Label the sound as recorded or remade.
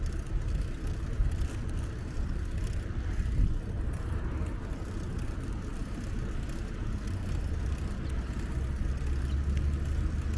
recorded